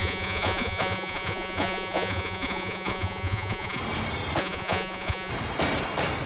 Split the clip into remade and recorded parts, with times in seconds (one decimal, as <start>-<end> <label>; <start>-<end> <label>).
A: 0.0-3.8 remade; 3.8-4.4 recorded; 4.4-5.3 remade; 5.3-6.3 recorded